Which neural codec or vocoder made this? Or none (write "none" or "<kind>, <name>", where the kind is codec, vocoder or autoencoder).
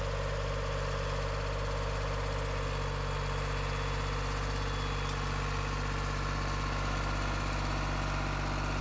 none